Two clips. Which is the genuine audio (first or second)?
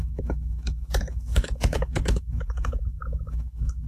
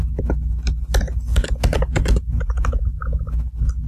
second